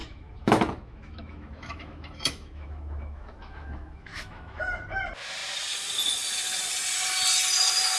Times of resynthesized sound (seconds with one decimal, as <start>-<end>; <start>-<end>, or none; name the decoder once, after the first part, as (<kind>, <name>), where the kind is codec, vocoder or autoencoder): 0.0-4.6 (autoencoder, DAC-VAE)